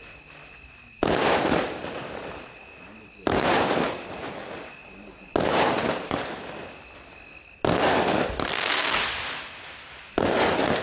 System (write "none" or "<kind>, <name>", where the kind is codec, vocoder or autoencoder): none